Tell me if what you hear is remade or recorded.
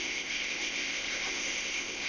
remade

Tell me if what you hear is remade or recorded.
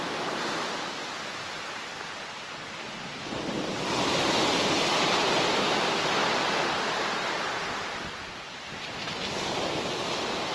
remade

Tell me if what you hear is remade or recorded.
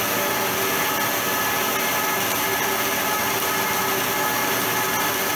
recorded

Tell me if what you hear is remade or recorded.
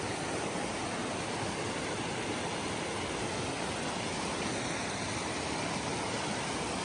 recorded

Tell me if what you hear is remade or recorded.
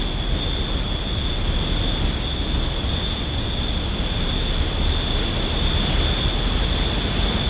recorded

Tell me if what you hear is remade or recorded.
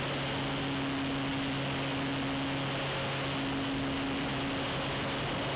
recorded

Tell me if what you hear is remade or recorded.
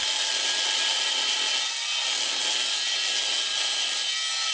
recorded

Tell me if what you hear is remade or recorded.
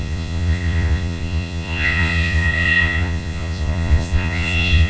remade